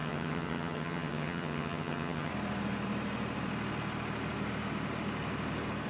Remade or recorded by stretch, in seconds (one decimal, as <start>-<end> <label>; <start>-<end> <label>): 0.0-2.3 remade; 2.3-5.9 recorded